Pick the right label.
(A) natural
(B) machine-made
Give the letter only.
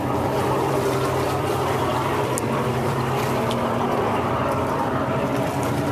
B